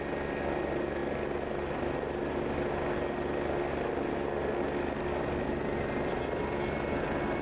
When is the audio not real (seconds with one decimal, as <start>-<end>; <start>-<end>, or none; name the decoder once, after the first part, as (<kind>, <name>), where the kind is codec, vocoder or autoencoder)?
none